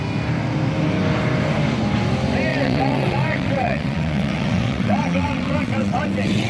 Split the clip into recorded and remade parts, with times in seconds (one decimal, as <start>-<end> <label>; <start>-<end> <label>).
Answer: 0.0-2.5 recorded; 2.5-6.5 remade